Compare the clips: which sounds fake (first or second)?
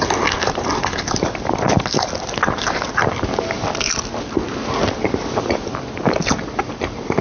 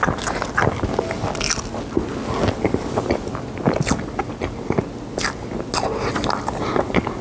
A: first